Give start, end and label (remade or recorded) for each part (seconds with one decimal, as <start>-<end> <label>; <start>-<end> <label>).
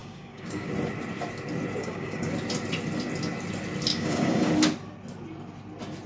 0.0-0.7 remade; 0.7-1.8 recorded; 1.8-2.3 remade; 2.3-3.9 recorded; 3.9-4.5 remade; 4.5-6.1 recorded